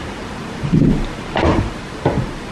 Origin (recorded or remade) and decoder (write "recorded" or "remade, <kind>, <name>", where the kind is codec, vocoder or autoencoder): remade, vocoder, BigVGAN v2